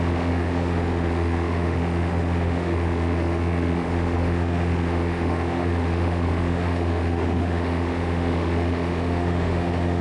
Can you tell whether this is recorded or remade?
remade